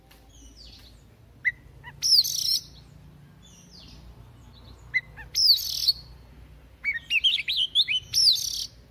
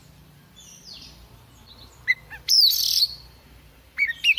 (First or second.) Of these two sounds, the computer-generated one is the second